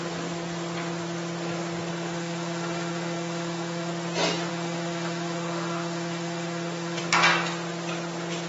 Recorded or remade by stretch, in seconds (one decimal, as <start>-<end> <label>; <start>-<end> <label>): 0.0-1.9 recorded; 1.9-3.9 remade; 3.9-4.5 recorded; 4.5-7.0 remade; 7.0-8.5 recorded